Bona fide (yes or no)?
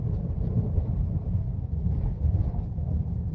no